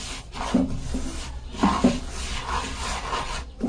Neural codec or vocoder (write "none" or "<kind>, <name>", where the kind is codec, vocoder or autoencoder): none